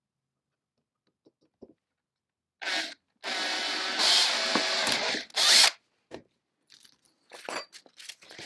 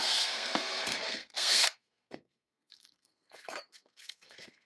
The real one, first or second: first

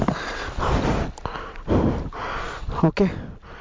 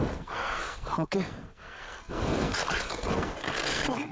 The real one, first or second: first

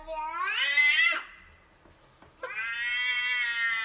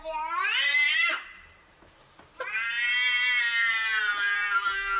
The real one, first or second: first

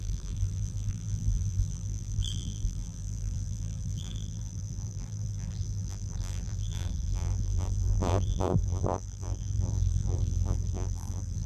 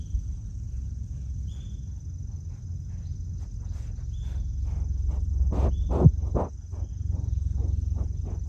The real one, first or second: second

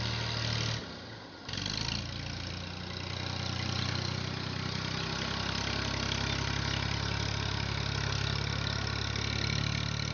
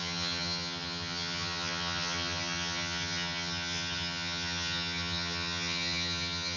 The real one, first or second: first